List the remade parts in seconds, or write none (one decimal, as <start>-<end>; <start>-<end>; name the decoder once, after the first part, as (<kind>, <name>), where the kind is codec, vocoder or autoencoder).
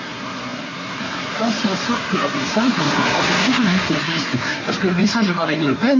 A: 0.0-6.0 (codec, SNAC)